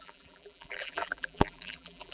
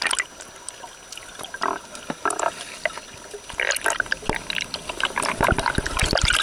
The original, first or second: second